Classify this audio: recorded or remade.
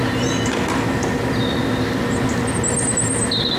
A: recorded